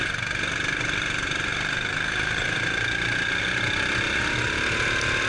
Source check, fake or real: real